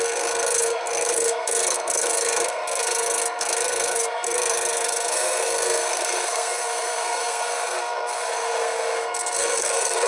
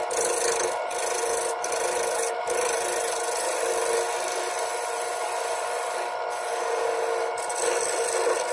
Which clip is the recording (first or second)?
second